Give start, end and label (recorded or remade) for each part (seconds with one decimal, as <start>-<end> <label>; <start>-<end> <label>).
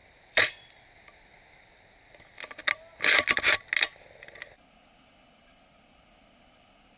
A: 0.0-1.0 remade; 1.0-7.0 recorded